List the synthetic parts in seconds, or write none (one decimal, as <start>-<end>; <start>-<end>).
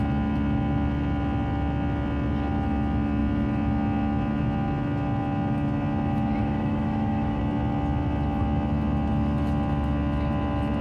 6.4-7.4